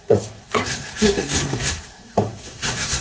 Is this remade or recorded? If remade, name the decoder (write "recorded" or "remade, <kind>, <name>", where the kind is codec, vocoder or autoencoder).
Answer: remade, codec, SNAC